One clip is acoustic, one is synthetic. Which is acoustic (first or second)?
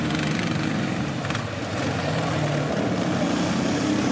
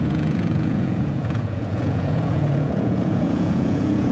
first